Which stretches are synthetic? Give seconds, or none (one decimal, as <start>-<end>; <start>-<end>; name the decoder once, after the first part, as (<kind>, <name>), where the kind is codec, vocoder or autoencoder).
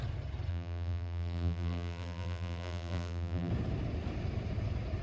0.5-3.5 (vocoder, BigVGAN v2)